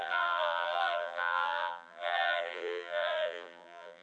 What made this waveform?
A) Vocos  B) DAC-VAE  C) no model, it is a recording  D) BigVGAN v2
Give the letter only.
D